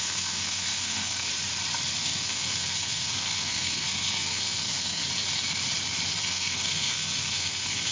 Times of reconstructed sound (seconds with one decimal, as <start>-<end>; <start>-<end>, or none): 0.0-1.3; 2.0-5.0; 6.2-7.9